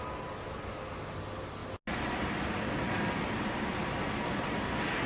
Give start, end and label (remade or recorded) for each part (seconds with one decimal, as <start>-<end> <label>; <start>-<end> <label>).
0.0-5.1 recorded

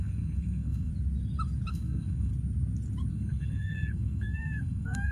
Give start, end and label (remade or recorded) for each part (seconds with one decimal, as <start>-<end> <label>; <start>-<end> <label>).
0.0-0.9 remade; 0.9-1.7 recorded; 1.7-2.3 remade; 2.3-3.1 recorded; 3.1-5.1 remade

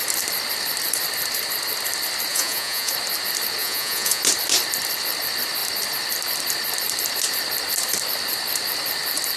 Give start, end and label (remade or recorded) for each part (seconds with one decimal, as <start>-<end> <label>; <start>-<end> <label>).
0.0-2.3 recorded; 2.3-2.9 remade; 2.9-3.6 recorded; 3.6-4.2 remade; 4.2-9.4 recorded

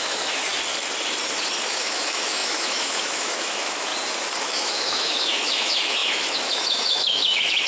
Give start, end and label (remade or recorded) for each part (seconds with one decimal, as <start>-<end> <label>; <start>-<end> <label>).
0.0-0.5 remade; 0.5-1.6 recorded; 1.6-3.9 remade; 3.9-4.4 recorded; 4.4-7.7 remade